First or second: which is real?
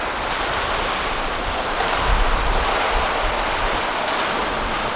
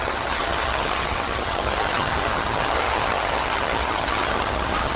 first